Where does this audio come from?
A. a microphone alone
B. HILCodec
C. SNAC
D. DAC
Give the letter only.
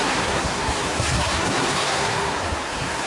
C